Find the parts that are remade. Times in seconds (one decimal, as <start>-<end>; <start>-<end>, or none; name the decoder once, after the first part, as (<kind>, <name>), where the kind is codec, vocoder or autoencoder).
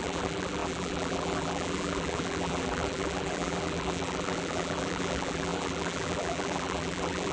0.0-7.3 (vocoder, BigVGAN v2)